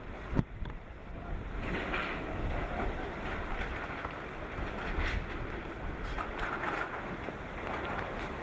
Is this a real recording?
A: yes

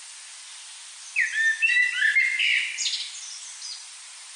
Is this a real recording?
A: yes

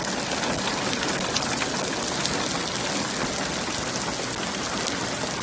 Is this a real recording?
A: yes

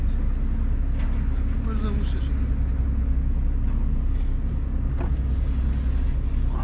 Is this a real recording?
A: yes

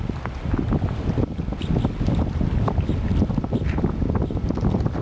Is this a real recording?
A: yes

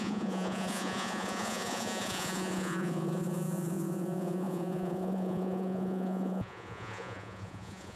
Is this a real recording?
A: no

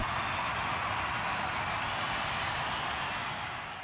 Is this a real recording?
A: yes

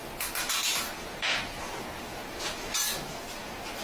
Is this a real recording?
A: yes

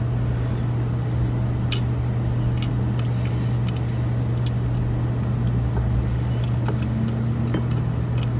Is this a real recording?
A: yes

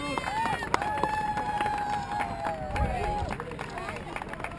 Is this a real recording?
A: yes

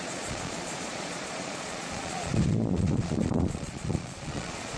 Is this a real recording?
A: no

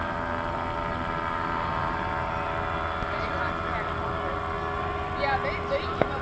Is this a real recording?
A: yes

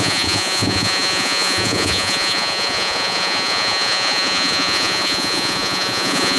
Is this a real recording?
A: no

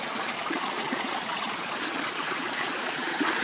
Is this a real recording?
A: no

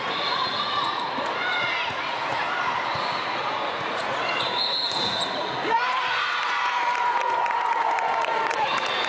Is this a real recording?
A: no